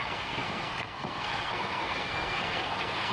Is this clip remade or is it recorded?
remade